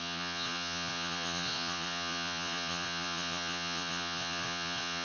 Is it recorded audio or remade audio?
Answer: remade